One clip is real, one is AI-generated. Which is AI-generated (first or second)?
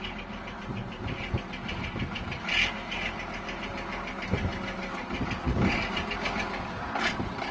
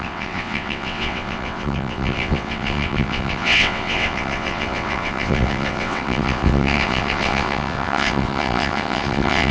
second